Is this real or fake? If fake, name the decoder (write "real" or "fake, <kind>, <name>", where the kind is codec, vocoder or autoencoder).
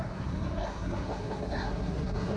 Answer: fake, codec, SNAC